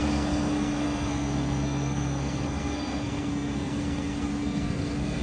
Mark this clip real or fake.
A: fake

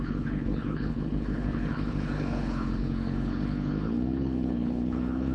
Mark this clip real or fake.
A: fake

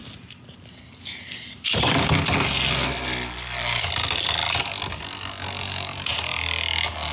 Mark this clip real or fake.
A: real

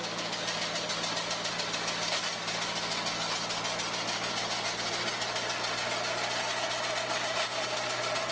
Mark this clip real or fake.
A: real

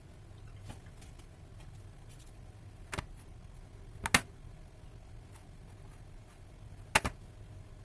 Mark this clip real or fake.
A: real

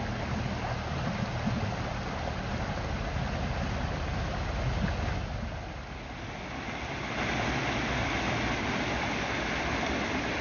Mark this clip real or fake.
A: real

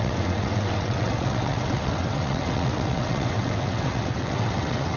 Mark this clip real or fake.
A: fake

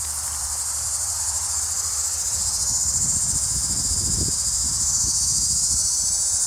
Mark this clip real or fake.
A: real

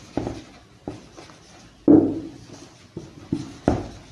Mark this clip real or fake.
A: real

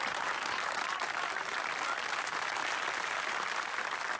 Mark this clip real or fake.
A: real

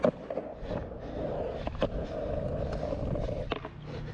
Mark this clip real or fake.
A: real